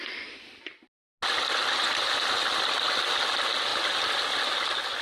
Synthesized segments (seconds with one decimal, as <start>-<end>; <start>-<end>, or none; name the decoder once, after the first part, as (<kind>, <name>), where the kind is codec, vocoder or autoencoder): none